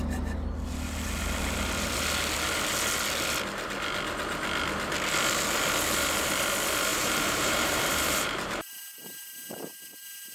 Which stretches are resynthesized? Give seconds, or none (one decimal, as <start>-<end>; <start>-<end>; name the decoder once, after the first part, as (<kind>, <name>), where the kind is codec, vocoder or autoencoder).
6.9-10.3 (vocoder, BigVGAN v2)